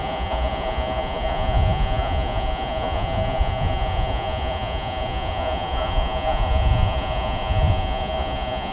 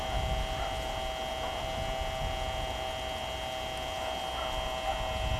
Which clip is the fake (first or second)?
first